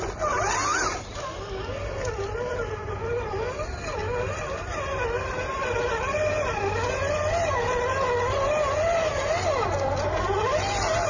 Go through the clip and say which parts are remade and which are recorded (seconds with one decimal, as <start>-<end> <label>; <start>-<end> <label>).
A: 0.0-11.1 recorded